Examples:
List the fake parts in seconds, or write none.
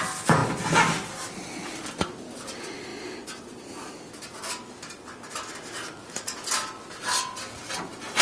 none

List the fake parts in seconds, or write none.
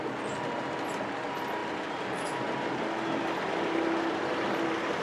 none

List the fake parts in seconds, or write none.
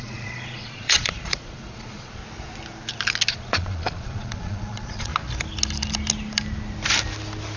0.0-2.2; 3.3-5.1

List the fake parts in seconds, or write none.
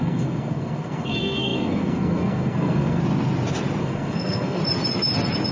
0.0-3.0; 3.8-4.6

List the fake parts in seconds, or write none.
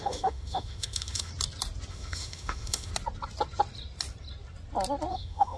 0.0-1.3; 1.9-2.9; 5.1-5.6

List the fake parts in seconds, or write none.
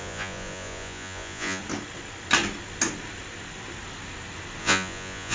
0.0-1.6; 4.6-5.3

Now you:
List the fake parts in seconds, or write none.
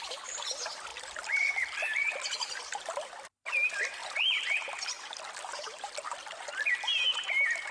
0.9-2.6; 4.0-6.6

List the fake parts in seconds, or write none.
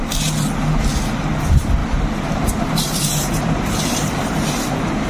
1.8-5.1